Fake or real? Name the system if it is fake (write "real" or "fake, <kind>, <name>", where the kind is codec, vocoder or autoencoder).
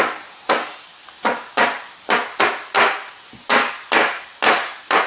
real